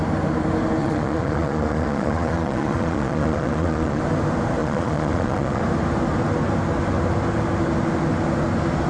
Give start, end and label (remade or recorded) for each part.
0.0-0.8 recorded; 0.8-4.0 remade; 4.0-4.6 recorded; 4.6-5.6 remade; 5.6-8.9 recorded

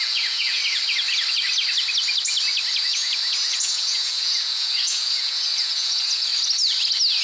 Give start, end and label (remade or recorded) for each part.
0.0-0.6 remade; 0.6-2.8 recorded; 2.8-6.3 remade; 6.3-7.2 recorded